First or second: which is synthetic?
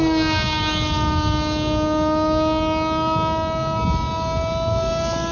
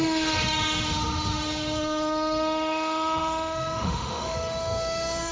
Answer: second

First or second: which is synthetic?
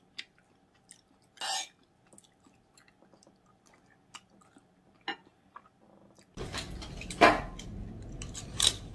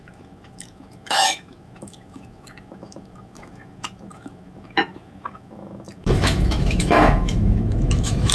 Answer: second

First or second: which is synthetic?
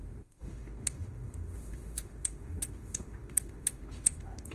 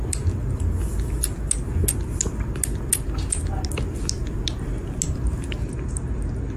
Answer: first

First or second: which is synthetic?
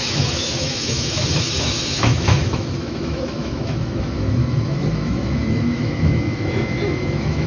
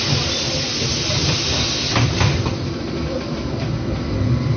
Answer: first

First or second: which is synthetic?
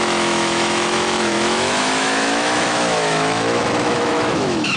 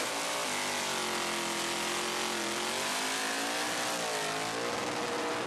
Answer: first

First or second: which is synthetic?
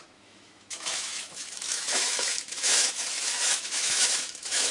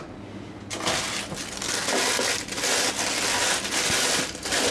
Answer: first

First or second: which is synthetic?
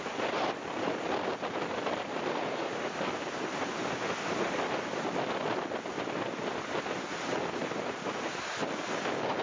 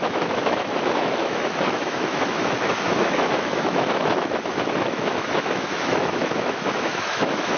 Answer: second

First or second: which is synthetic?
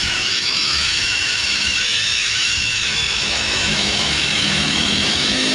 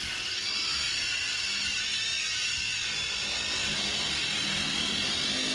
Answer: first